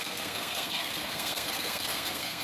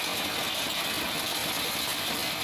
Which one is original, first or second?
second